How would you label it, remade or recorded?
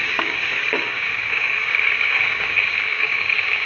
remade